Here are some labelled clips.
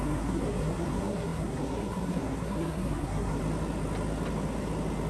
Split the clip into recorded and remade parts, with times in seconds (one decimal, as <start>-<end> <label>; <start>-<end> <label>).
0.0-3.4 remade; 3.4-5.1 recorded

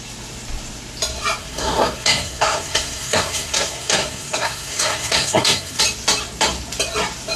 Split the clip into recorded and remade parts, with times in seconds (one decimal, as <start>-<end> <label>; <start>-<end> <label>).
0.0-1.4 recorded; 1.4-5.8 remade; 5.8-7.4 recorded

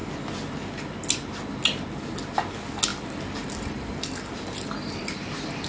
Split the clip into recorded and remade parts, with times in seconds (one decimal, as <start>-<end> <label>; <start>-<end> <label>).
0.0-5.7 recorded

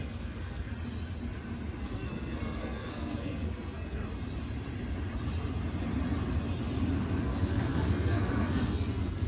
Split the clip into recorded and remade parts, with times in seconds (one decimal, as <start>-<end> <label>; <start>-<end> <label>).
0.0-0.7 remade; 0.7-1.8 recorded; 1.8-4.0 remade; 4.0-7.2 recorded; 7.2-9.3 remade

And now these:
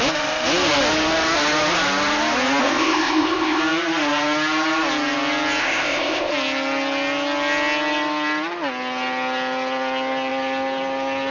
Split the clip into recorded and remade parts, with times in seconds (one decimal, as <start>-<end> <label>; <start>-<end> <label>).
0.0-2.6 recorded; 2.6-3.6 remade; 3.6-5.6 recorded; 5.6-6.3 remade; 6.3-11.3 recorded

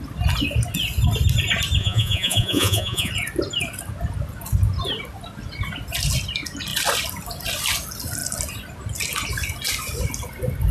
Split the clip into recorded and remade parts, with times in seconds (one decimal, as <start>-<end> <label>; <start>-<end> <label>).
0.0-1.8 recorded; 1.8-3.1 remade; 3.1-10.7 recorded

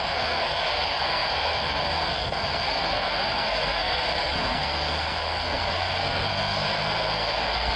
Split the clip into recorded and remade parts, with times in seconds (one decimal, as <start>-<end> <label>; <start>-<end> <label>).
0.0-7.8 remade

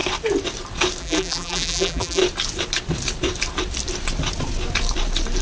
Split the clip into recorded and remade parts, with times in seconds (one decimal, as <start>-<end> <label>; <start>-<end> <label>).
0.0-1.0 recorded; 1.0-2.2 remade; 2.2-5.4 recorded